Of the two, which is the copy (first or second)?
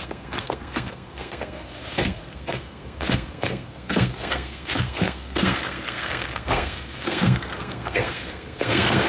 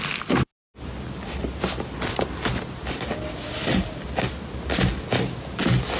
first